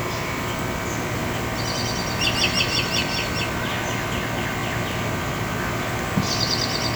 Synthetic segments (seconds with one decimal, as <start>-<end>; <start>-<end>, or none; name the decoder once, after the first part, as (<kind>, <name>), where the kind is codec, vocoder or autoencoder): none